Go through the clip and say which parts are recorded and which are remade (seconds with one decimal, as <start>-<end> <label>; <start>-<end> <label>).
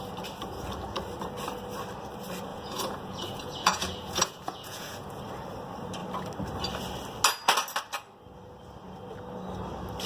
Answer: 0.0-2.5 recorded; 2.5-5.2 remade; 5.2-10.1 recorded